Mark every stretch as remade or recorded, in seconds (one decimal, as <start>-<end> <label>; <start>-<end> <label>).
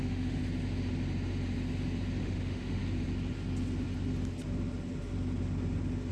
0.0-0.4 remade; 0.4-2.2 recorded; 2.2-2.8 remade; 2.8-6.1 recorded